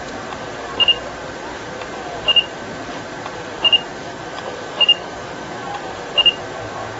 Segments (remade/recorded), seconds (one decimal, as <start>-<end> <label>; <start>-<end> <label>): 0.0-4.0 recorded; 4.0-5.8 remade; 5.8-7.0 recorded